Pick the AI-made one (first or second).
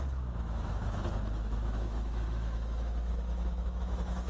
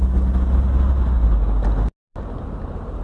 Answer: first